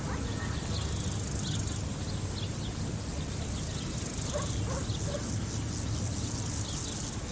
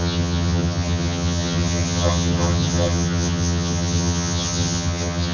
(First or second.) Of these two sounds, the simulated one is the second